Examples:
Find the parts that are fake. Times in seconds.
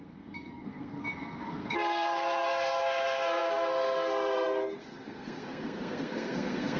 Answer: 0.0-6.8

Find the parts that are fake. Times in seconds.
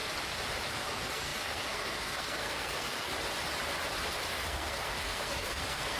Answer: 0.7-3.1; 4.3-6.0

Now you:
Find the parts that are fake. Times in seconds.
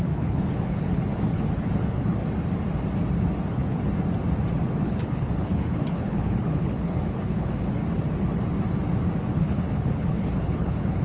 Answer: 0.0-2.2; 3.5-3.9; 4.8-7.8; 9.3-11.0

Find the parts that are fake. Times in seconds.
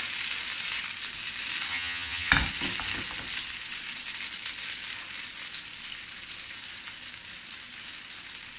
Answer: 1.7-2.3